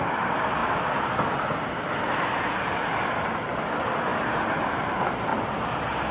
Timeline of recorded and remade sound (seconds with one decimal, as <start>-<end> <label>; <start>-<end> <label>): 0.0-6.1 recorded